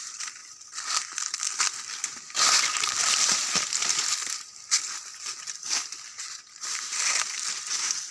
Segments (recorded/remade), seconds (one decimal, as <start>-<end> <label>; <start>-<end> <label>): 0.0-0.4 remade; 0.4-3.0 recorded; 3.0-3.4 remade; 3.4-6.7 recorded; 6.7-8.1 remade